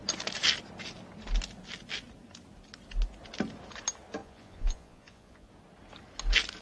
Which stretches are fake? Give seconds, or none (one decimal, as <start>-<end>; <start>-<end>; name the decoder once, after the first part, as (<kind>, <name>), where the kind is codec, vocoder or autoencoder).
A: 4.2-5.5 (vocoder, Vocos)